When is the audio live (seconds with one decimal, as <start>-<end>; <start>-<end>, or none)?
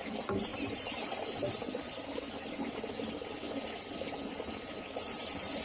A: 0.0-5.6